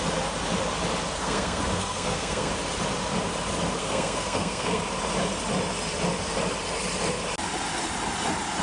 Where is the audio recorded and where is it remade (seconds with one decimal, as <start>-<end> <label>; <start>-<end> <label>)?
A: 0.0-1.2 recorded; 1.2-2.5 remade; 2.5-3.8 recorded; 3.8-4.8 remade; 4.8-8.6 recorded